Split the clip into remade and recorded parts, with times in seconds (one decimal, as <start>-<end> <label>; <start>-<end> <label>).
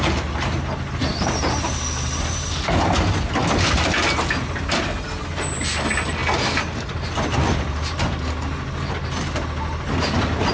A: 0.0-10.5 recorded